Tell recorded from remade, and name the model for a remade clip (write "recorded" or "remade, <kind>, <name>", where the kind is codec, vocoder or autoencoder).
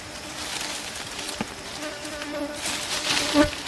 recorded